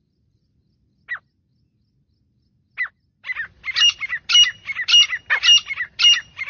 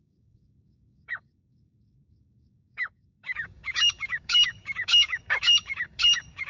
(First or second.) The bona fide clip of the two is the first